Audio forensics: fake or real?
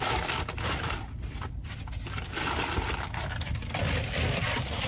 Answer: fake